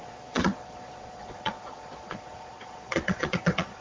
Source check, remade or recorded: remade